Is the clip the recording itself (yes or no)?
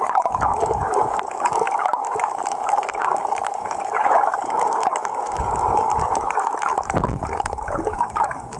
no